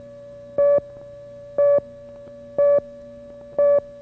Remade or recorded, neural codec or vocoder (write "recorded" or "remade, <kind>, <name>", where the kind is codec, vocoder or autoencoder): recorded